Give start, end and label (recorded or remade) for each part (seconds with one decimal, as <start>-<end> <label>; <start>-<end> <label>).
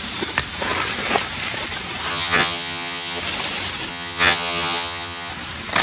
0.0-2.1 recorded; 2.1-3.2 remade; 3.2-3.9 recorded; 3.9-5.3 remade; 5.3-5.8 recorded